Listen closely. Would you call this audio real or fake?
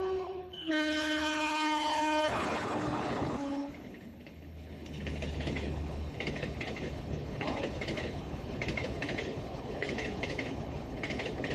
fake